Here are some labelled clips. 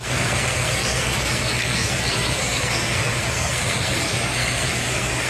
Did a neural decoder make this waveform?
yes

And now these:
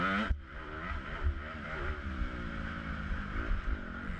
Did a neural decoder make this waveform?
no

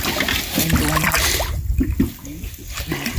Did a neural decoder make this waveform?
no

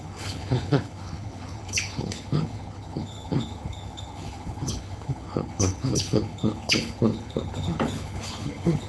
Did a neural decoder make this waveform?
yes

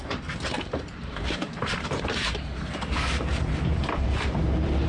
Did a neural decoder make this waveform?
yes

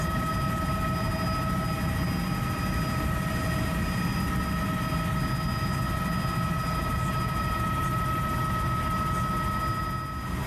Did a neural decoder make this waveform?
no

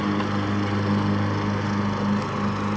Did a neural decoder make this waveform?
no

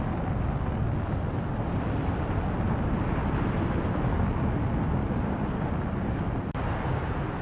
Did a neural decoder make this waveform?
no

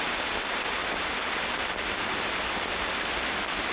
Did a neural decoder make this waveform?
no